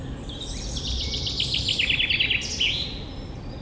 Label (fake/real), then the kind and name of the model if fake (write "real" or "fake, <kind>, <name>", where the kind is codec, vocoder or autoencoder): fake, vocoder, BigVGAN v2